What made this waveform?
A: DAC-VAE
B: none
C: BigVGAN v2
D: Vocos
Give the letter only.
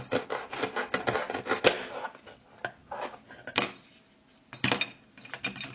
B